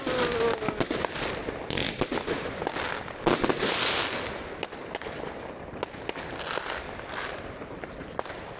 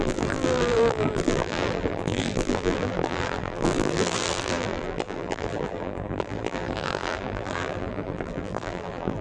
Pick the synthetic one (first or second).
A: second